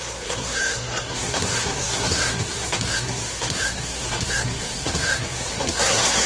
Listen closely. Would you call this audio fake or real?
fake